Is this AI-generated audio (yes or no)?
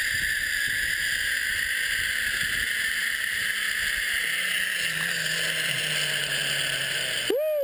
no